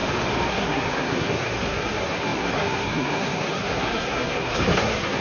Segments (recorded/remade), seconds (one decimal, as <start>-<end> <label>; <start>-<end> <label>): 0.0-0.5 recorded; 0.5-5.2 remade